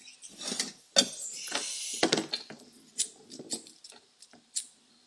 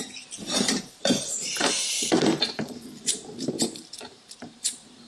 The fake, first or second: second